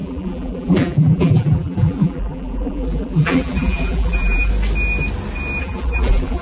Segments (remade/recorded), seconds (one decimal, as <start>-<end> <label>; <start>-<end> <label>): 0.0-4.5 remade; 4.5-5.6 recorded; 5.6-6.4 remade